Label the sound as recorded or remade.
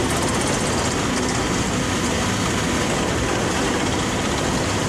recorded